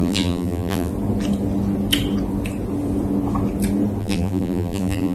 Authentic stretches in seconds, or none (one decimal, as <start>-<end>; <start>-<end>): 0.9-4.0

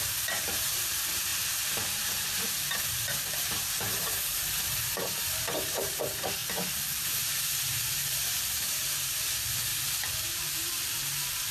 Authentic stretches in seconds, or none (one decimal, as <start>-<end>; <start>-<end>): 6.4-7.1; 9.7-10.2

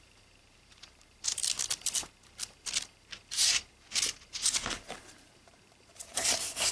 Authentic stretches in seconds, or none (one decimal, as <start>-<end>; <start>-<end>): 1.4-5.1

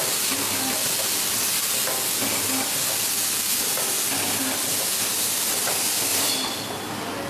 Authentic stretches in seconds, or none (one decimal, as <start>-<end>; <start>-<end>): 0.0-6.1; 6.6-7.3

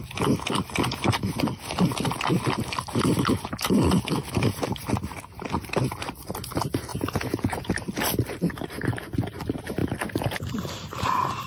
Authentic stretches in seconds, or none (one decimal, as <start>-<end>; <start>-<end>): 0.0-6.9; 7.7-11.5